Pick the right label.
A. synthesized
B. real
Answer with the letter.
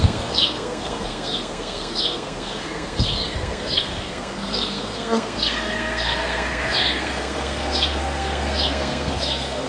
A